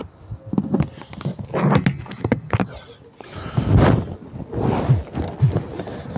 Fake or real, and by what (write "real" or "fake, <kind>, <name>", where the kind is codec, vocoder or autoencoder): real